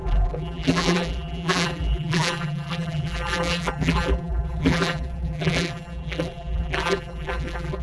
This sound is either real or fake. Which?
fake